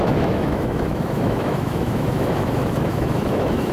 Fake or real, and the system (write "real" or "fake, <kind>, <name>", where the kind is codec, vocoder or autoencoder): fake, autoencoder, DAC-VAE